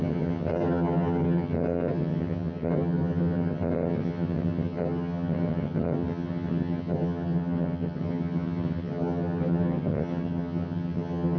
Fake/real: fake